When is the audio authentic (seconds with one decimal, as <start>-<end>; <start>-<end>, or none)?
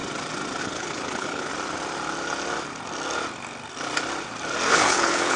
0.0-0.6; 1.5-4.7